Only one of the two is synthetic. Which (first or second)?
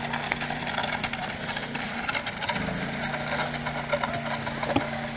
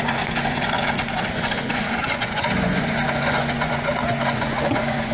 second